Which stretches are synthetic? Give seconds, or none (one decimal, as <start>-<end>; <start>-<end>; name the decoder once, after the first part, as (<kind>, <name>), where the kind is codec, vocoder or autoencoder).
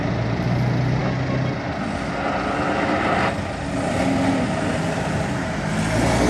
none